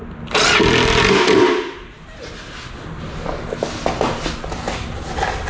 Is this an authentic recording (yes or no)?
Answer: yes